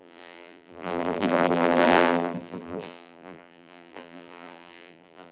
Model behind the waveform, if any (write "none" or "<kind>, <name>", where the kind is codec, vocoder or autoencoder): vocoder, BigVGAN v2